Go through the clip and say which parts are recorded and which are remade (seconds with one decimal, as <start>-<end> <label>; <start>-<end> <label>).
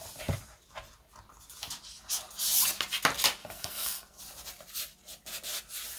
0.0-3.4 recorded; 3.4-4.2 remade; 4.2-6.0 recorded